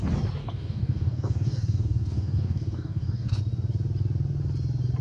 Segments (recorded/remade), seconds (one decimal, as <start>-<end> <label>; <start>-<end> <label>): 0.0-0.4 recorded; 0.4-3.4 remade; 3.4-5.0 recorded